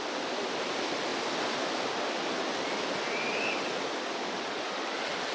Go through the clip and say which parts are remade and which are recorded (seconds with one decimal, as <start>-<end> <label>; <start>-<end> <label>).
0.0-5.3 recorded